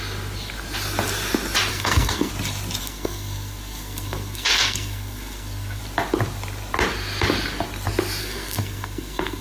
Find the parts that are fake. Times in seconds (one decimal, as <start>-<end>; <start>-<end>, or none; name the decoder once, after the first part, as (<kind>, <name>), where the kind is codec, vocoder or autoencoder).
1.7-2.3 (codec, SNAC); 2.8-5.8; 8.2-9.4